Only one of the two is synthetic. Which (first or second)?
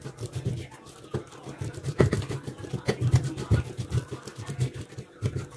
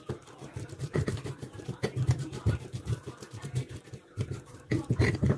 second